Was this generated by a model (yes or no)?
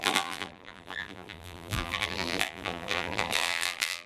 yes